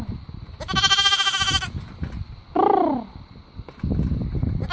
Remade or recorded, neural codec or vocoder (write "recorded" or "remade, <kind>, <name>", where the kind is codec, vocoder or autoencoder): recorded